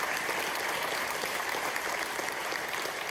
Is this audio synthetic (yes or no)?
no